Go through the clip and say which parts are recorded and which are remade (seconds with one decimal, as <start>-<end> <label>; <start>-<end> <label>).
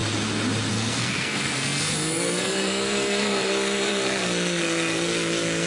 0.0-0.7 recorded; 0.7-5.7 remade